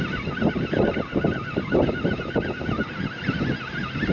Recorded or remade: recorded